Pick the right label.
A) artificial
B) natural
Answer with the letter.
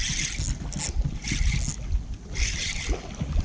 B